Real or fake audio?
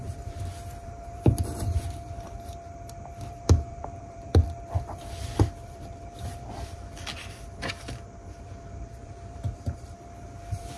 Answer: fake